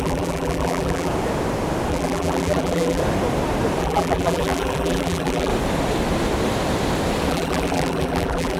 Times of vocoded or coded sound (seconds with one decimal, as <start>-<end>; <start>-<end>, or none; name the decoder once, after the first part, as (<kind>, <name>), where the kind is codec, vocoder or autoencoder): 0.0-1.1 (vocoder, BigVGAN v2); 1.9-3.0; 3.8-5.5; 7.3-8.6